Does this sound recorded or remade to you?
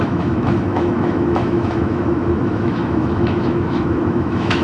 remade